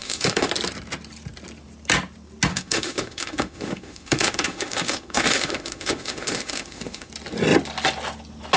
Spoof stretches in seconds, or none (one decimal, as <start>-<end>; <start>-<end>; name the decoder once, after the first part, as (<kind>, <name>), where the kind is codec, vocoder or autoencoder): 0.0-0.5 (autoencoder, DAC-VAE); 2.5-7.1